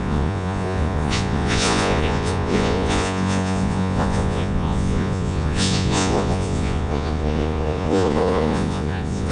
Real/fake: fake